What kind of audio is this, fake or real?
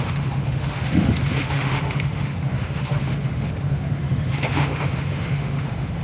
fake